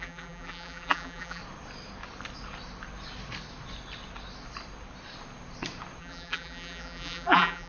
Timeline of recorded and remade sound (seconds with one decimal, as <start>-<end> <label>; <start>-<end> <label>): 0.0-1.4 remade; 1.4-6.0 recorded; 6.0-7.7 remade